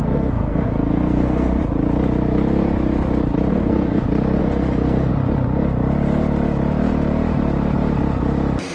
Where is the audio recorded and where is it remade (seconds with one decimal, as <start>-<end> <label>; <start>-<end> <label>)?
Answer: 0.0-1.6 remade; 1.6-3.5 recorded; 3.5-4.0 remade; 4.0-4.4 recorded; 4.4-5.1 remade; 5.1-8.7 recorded